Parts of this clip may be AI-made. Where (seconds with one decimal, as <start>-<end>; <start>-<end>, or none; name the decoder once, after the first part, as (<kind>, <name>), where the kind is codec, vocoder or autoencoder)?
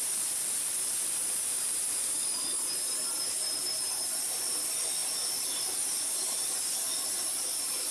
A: 0.0-2.5 (vocoder, BigVGAN v2); 3.2-7.9